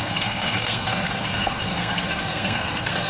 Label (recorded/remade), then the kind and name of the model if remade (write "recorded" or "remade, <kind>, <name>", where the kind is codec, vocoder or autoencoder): remade, codec, SNAC